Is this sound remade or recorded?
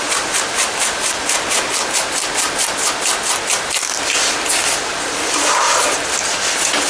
recorded